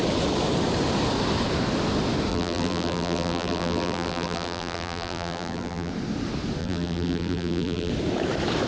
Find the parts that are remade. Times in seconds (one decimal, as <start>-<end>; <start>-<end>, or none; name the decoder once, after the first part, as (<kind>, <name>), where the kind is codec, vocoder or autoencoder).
2.3-5.9 (vocoder, BigVGAN v2); 6.6-7.9